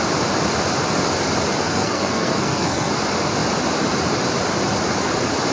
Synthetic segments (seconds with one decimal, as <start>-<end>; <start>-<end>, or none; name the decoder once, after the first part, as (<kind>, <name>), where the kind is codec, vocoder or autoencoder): 1.6-2.9 (codec, SNAC)